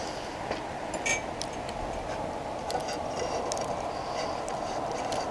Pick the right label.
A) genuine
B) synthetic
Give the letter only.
A